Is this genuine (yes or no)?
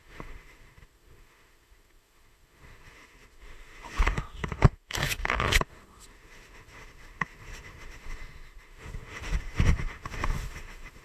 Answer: no